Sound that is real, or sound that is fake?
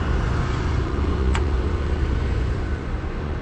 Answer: fake